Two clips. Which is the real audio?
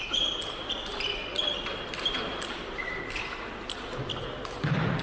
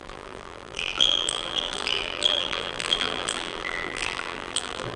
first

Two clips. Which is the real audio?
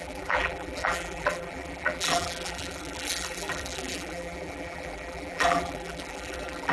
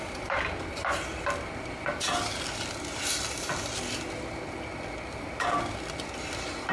second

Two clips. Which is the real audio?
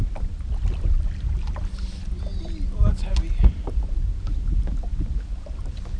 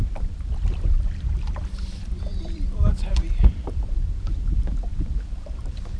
first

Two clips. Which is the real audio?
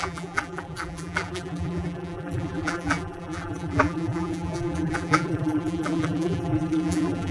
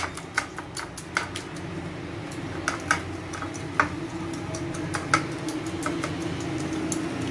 second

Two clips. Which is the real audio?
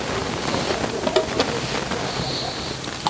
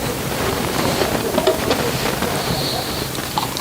first